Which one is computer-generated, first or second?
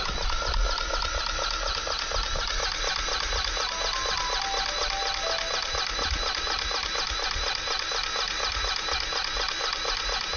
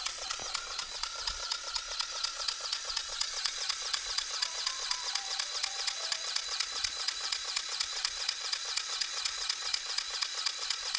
second